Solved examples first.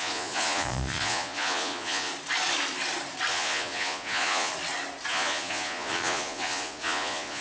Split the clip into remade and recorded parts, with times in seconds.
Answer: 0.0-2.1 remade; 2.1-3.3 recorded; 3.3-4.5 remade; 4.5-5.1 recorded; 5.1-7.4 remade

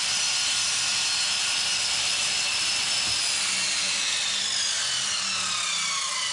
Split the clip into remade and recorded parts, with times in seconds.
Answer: 0.0-6.3 recorded

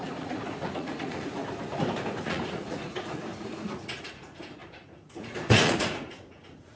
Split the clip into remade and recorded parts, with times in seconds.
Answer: 0.0-1.4 remade; 1.4-2.2 recorded; 2.2-6.8 remade

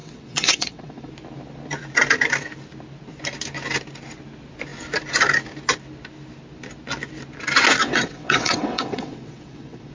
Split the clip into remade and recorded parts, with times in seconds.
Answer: 0.0-1.1 remade; 1.1-7.8 recorded; 7.8-9.9 remade

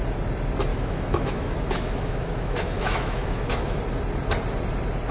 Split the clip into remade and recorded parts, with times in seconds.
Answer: 0.0-0.7 recorded; 0.7-3.8 remade; 3.8-5.1 recorded

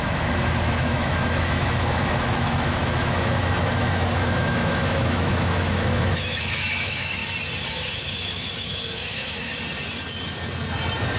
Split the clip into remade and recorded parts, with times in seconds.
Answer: 0.0-7.2 remade; 7.2-7.7 recorded; 7.7-9.5 remade; 9.5-11.2 recorded

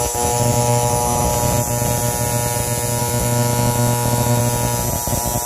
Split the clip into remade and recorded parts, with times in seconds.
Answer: 0.0-1.3 remade; 1.3-3.0 recorded; 3.0-4.4 remade; 4.4-5.5 recorded